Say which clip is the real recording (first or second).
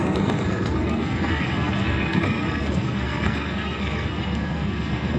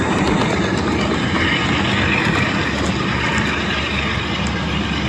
second